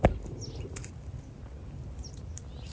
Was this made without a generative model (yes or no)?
yes